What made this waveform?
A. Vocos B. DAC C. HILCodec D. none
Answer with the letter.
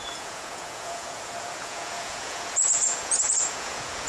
A